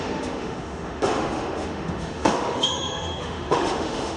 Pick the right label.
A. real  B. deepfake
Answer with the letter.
B